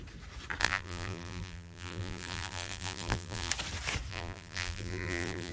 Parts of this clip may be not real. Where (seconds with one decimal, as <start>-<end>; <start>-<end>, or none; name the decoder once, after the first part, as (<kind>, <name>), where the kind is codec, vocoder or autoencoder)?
0.6-3.5 (vocoder, BigVGAN v2); 4.1-5.5